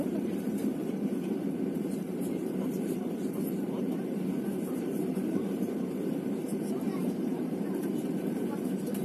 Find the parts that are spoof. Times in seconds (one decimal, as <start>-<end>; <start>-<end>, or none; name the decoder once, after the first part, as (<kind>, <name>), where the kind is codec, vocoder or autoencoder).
0.0-9.0 (vocoder, BigVGAN v2)